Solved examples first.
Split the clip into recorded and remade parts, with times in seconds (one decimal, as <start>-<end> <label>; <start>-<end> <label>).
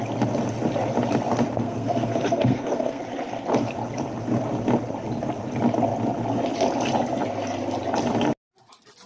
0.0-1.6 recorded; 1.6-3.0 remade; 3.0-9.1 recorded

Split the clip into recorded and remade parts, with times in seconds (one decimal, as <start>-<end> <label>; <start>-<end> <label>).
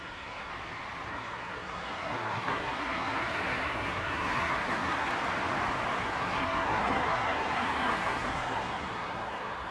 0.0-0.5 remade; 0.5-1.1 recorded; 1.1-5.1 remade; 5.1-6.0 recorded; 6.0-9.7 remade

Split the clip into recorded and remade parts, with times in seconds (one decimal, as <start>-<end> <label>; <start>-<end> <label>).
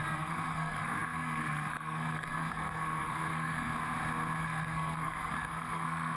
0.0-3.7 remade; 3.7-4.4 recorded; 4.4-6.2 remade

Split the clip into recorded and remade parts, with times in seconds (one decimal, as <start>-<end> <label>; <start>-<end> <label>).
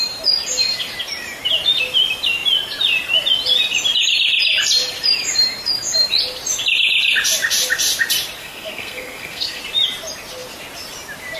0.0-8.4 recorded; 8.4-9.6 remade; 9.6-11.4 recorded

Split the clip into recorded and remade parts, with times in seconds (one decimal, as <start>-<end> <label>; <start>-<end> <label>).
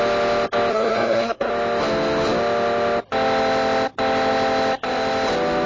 0.0-0.7 recorded; 0.7-1.5 remade; 1.5-5.7 recorded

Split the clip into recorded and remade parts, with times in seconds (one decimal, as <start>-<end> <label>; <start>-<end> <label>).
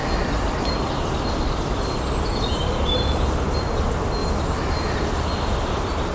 0.0-6.1 recorded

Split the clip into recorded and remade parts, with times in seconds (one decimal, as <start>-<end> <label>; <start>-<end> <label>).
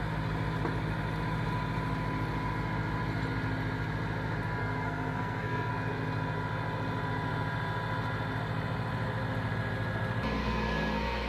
0.0-4.6 recorded; 4.6-5.7 remade; 5.7-10.4 recorded; 10.4-11.3 remade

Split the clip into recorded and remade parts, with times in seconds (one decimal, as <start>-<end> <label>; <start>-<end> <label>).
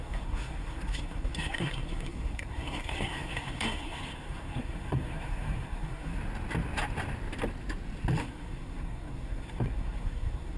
0.0-6.2 remade; 6.2-8.2 recorded; 8.2-10.6 remade